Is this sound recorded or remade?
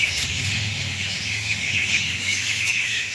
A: remade